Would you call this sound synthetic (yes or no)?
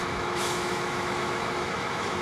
yes